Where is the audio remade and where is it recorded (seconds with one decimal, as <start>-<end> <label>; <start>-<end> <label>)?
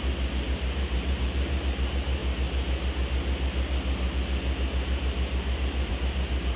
0.0-2.2 remade; 2.2-5.9 recorded; 5.9-6.6 remade